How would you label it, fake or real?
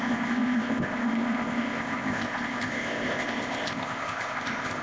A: fake